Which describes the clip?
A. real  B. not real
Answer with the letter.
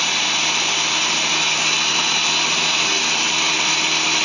A